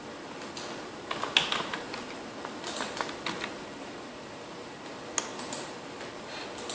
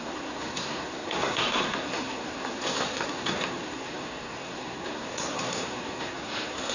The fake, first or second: second